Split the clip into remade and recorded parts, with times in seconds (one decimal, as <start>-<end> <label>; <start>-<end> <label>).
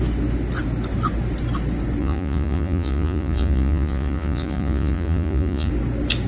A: 0.0-2.0 recorded; 2.0-5.7 remade; 5.7-6.3 recorded